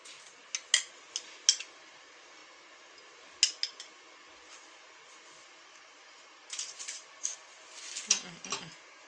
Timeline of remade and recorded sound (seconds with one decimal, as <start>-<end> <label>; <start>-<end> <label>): 0.0-5.4 recorded; 5.4-7.1 remade; 7.1-9.1 recorded